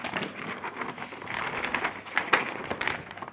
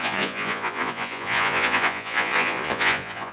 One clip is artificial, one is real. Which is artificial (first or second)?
second